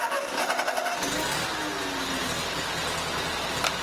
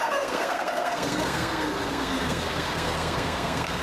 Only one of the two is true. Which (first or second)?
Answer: first